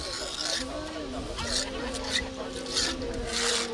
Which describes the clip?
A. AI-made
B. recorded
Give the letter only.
B